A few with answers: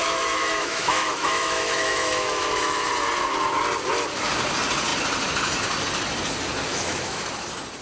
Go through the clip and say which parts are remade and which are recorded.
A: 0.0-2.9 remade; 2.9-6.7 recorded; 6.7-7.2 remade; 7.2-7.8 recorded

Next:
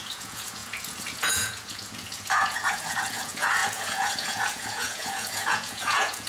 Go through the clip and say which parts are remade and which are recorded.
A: 0.0-6.3 remade